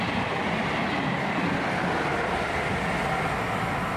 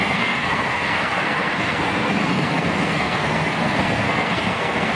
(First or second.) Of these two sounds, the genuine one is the first